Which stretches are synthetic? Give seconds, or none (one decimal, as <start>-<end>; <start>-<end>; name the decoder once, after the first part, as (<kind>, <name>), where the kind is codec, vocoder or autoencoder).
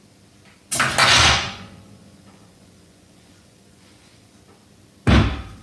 1.0-4.4 (vocoder, Vocos)